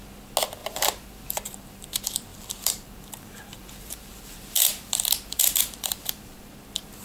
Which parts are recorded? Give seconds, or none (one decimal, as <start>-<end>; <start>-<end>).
0.0-0.6; 1.9-2.3; 6.5-7.0